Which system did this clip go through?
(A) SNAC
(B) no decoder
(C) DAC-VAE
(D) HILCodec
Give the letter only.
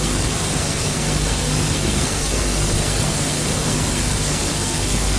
A